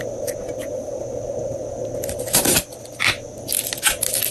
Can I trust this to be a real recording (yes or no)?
yes